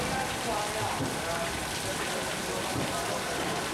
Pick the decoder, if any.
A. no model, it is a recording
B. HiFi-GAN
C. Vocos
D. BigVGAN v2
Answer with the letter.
D